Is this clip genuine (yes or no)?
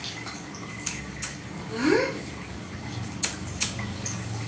no